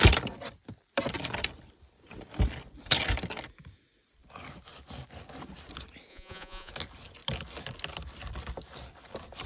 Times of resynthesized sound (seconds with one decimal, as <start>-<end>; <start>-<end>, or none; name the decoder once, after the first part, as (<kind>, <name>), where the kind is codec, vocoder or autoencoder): 6.1-6.7 (vocoder, Vocos)